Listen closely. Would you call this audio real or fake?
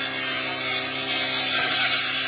real